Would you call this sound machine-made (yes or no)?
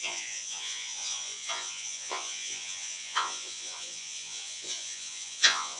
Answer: yes